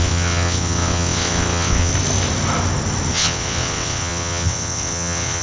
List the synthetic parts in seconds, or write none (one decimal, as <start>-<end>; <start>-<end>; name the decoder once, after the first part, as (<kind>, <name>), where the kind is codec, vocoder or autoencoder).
0.0-1.9 (vocoder, WaveNeXt); 3.1-5.4